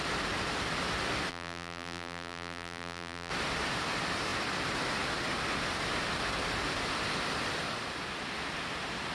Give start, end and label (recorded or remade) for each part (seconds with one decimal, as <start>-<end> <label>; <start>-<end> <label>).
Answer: 0.0-1.3 recorded; 1.3-3.3 remade; 3.3-9.1 recorded